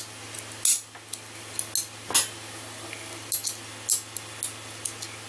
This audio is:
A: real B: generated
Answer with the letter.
A